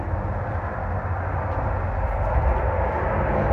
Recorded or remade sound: recorded